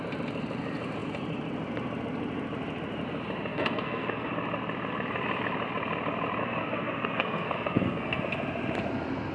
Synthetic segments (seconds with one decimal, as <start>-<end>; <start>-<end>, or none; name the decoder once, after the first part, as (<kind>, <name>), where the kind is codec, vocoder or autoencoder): 3.5-4.3 (codec, SNAC); 6.4-8.2